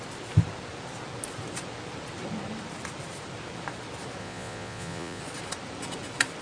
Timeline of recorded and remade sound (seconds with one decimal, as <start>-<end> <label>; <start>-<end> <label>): 0.0-4.2 recorded; 4.2-5.2 remade; 5.2-6.4 recorded